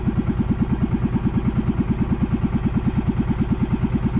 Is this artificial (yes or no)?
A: no